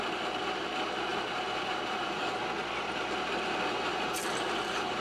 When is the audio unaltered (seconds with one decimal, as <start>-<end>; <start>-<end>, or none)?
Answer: 0.0-1.1; 2.4-3.9